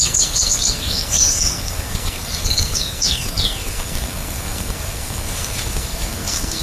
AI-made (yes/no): yes